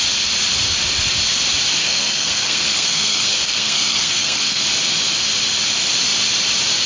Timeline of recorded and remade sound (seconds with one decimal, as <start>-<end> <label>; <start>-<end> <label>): 0.0-1.8 recorded; 1.8-4.6 remade; 4.6-6.9 recorded